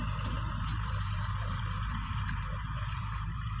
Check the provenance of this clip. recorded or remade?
remade